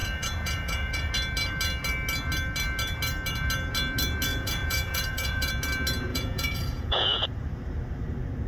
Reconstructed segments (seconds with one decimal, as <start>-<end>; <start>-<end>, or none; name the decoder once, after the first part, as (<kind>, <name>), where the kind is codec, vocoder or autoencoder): 0.0-1.1 (vocoder, Vocos); 4.3-5.5; 6.1-7.3